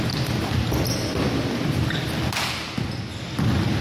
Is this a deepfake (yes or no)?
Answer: no